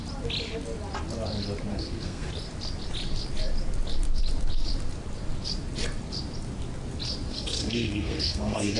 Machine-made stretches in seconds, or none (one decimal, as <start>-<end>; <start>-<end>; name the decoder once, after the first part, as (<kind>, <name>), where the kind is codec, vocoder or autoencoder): 1.7-2.3 (codec, SNAC); 7.3-8.8